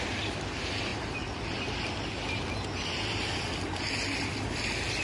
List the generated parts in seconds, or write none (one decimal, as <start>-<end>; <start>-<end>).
none